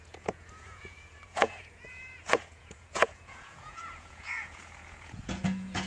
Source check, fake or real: fake